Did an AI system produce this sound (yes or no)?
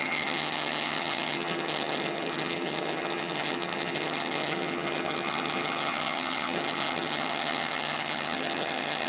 yes